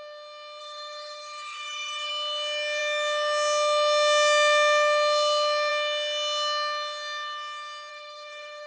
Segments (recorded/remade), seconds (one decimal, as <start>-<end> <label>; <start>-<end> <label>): 0.0-0.6 recorded; 0.6-2.1 remade; 2.1-7.9 recorded; 7.9-8.7 remade